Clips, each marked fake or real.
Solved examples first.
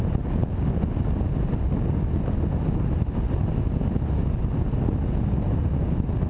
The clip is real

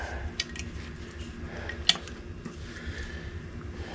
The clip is real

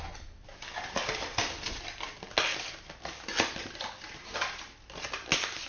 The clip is real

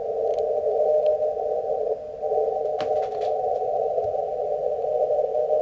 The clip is real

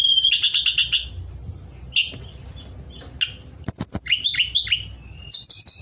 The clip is real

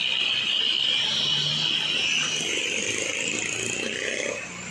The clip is real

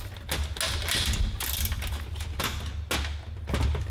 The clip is real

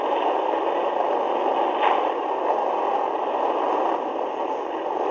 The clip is real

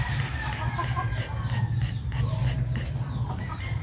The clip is real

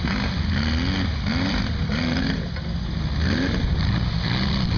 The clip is real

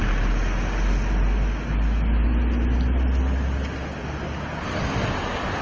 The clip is real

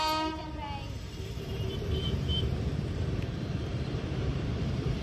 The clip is fake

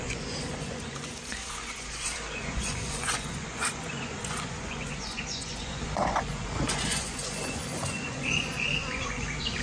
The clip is fake